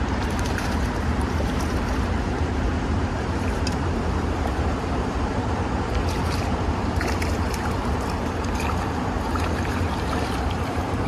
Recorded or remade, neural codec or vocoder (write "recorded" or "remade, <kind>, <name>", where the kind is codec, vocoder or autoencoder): remade, vocoder, BigVGAN v2